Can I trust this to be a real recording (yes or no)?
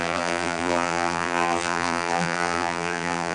no